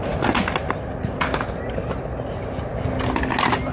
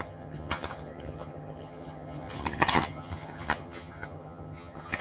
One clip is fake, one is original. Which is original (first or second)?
first